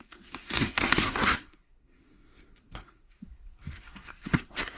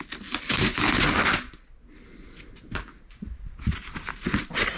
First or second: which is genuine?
second